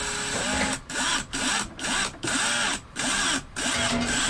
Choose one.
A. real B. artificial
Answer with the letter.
A